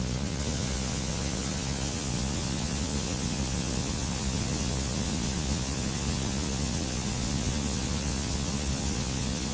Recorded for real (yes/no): no